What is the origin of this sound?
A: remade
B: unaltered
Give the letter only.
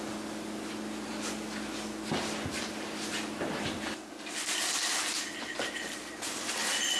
B